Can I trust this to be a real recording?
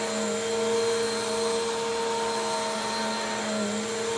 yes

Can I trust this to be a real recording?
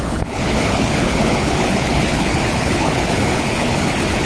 no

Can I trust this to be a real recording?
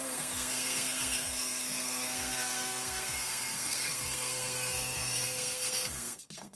no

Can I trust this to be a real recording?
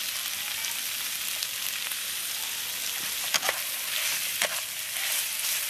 yes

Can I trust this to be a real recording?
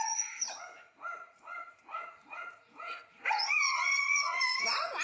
no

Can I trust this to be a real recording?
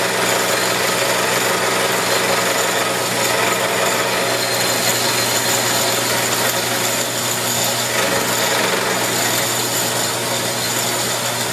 yes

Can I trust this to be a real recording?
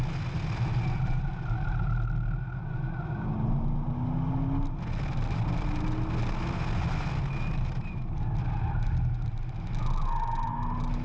yes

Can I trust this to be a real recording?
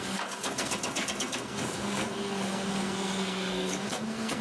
no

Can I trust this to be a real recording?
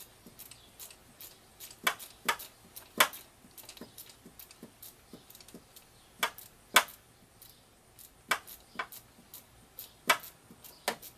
yes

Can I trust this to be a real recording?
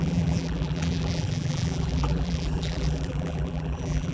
no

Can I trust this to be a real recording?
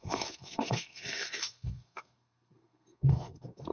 no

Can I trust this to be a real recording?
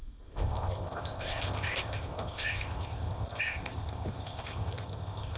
no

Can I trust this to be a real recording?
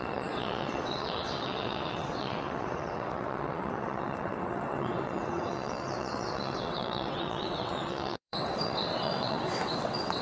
no